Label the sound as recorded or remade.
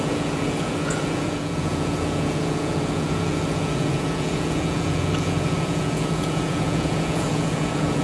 remade